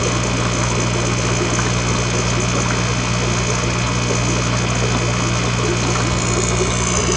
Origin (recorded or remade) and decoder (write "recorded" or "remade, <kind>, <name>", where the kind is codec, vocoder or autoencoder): recorded